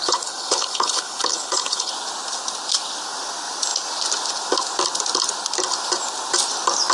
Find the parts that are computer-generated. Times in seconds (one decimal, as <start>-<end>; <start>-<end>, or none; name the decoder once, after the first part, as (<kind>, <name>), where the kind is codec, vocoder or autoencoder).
0.0-1.9 (codec, HILCodec)